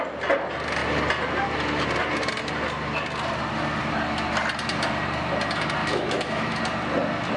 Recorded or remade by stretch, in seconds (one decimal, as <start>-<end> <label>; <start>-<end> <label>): 0.0-5.8 recorded; 5.8-6.6 remade; 6.6-7.4 recorded